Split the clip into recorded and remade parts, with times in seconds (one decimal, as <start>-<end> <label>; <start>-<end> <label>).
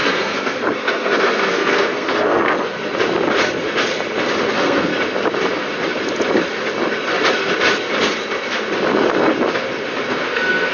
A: 0.0-2.7 remade; 2.7-4.5 recorded; 4.5-4.9 remade; 4.9-10.1 recorded; 10.1-10.7 remade